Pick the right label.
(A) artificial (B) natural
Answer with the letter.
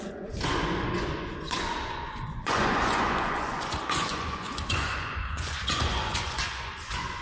A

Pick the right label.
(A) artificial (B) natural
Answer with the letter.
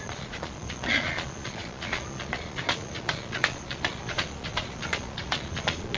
A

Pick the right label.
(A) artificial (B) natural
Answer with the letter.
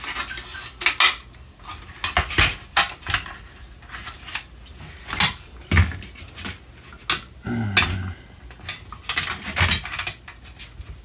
B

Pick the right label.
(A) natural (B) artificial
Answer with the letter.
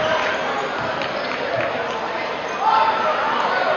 A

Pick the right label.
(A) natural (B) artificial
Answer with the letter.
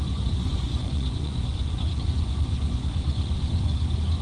B